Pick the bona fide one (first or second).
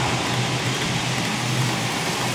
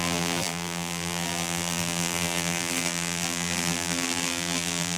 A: first